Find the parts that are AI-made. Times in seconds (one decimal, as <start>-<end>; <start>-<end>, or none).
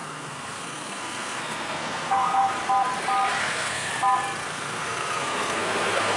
0.0-2.5; 3.4-3.9; 4.4-6.2